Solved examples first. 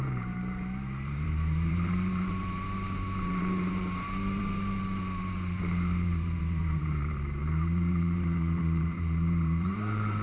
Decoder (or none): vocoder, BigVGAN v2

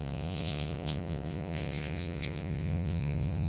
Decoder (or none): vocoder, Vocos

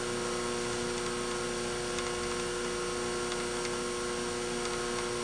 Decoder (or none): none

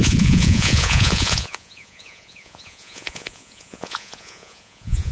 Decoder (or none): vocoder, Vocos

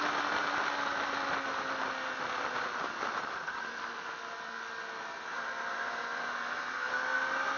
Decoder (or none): none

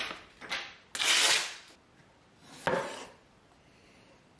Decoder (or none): none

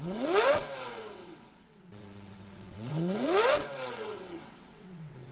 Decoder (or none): vocoder, WaveNeXt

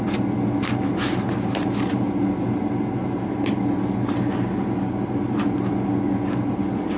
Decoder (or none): none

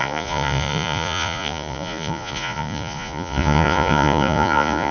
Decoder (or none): vocoder, Vocos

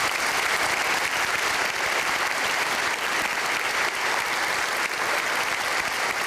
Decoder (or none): vocoder, BigVGAN v2